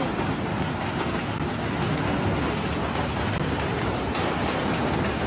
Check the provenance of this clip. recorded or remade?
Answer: recorded